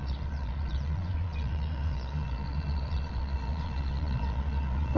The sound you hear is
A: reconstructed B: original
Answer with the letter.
A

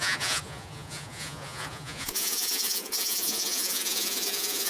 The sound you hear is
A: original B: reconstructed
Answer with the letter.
B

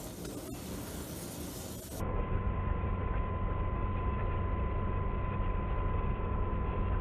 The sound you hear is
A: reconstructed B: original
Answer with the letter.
B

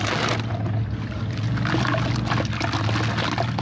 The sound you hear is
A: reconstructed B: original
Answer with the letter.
B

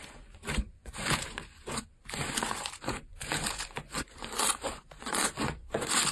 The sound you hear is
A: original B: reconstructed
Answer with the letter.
B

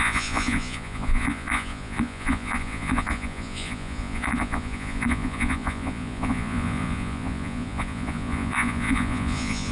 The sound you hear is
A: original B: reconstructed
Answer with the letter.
B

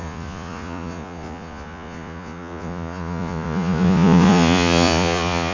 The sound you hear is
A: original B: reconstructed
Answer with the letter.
B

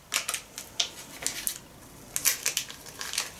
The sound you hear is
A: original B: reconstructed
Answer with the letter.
A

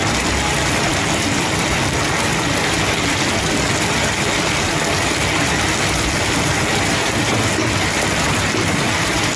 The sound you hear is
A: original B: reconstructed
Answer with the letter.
A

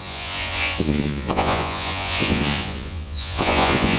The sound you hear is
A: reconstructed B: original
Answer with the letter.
A